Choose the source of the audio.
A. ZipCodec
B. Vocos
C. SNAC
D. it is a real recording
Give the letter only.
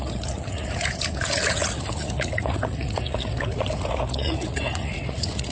B